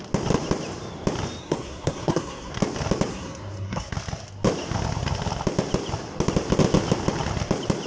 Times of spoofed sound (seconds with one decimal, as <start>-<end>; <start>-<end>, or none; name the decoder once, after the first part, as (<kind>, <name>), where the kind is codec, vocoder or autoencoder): 1.4-2.5 (codec, SNAC); 3.1-3.9